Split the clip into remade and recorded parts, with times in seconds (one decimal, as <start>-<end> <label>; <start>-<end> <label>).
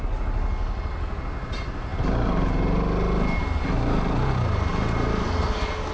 0.0-5.9 recorded